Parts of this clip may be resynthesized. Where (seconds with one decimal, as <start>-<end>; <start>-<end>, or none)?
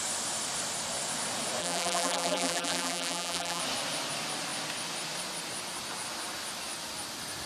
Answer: 1.6-3.6